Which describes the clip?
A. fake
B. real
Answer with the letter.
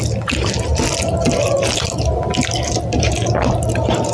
B